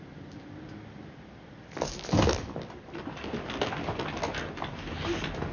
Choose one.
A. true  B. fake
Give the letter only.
A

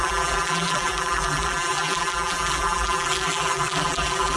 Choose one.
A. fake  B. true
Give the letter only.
A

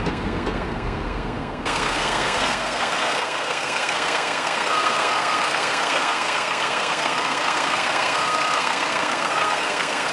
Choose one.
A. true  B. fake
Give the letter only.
B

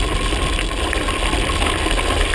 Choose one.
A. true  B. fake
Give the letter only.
B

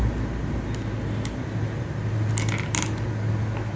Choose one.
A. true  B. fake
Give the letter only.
A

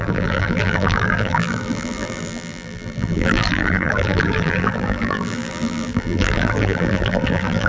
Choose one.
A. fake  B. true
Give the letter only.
A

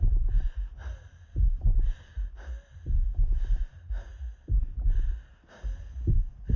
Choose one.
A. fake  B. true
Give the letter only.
B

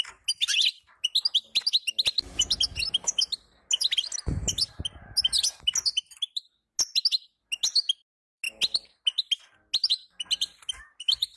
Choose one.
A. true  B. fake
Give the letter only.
A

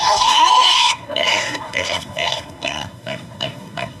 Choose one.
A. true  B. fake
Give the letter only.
B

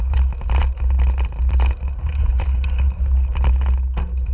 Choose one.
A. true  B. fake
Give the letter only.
A